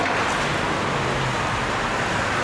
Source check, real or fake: real